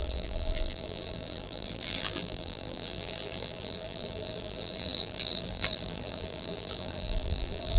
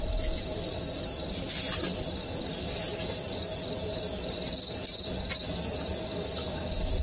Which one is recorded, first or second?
second